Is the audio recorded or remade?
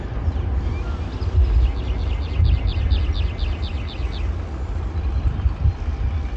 recorded